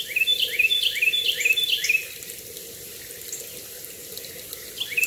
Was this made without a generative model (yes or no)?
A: yes